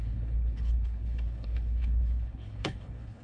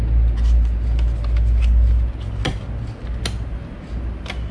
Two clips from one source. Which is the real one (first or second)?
second